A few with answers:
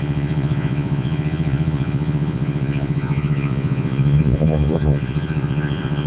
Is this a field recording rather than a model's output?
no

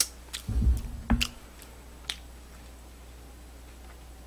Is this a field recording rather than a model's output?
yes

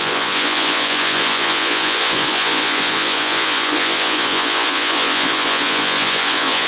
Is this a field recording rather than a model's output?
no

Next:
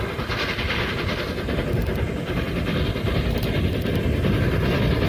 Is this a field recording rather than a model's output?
yes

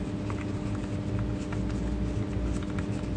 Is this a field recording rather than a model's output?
yes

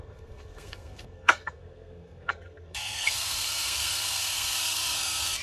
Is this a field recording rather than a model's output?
no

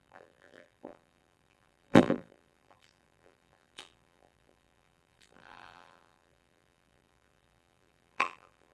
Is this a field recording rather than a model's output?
no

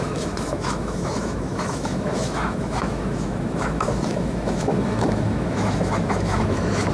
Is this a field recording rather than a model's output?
no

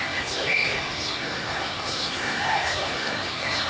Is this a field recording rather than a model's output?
no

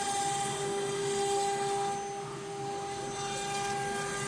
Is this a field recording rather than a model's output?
yes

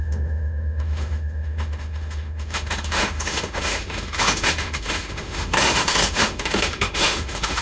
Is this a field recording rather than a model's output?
no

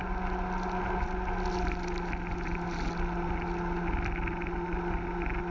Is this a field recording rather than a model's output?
yes